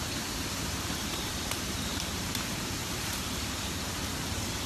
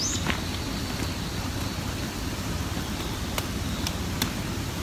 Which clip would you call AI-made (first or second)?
first